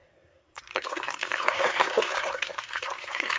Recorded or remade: remade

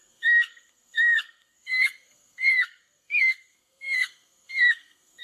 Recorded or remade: remade